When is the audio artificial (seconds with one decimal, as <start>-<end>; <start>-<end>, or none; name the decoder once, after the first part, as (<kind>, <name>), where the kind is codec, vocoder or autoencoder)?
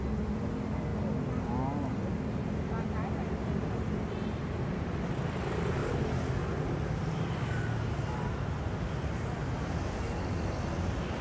none